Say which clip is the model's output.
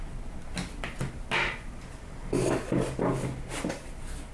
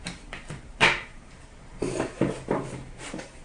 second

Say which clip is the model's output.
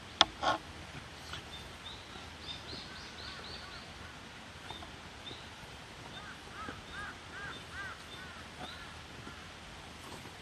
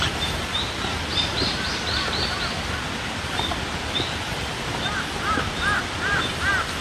second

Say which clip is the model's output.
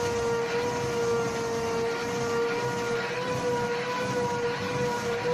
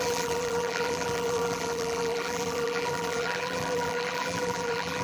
second